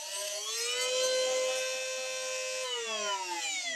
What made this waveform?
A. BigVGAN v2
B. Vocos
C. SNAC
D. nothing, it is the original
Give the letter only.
D